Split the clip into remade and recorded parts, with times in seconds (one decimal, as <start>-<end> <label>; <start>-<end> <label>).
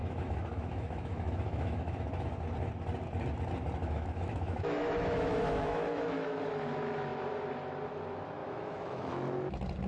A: 0.0-2.1 remade; 2.1-3.8 recorded; 3.8-6.5 remade; 6.5-8.4 recorded; 8.4-9.1 remade; 9.1-9.9 recorded